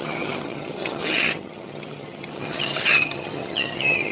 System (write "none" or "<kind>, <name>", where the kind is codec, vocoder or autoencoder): vocoder, HiFi-GAN